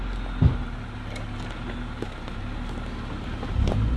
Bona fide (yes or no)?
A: yes